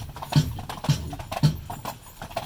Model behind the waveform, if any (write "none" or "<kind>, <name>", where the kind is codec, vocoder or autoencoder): none